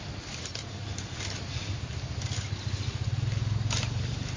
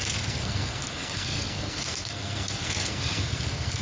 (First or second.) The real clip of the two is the first